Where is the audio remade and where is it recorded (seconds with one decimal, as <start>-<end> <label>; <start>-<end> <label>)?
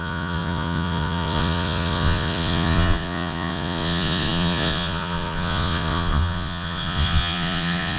0.0-8.0 remade